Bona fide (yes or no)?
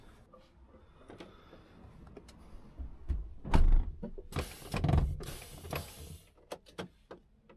yes